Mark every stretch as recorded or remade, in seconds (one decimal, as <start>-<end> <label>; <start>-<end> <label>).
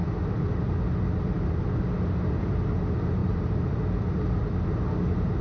0.0-3.2 recorded; 3.2-4.5 remade; 4.5-5.4 recorded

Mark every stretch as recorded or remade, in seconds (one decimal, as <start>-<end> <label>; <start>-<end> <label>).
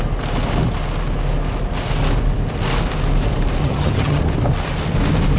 0.0-3.6 recorded; 3.6-4.2 remade; 4.2-5.4 recorded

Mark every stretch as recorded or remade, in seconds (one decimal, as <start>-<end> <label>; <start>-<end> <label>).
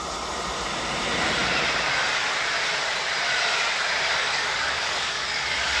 0.0-4.2 recorded; 4.2-5.8 remade